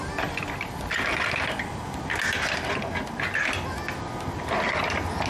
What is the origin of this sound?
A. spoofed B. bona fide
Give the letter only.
B